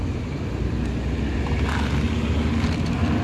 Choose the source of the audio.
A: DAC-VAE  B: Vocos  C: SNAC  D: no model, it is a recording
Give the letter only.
D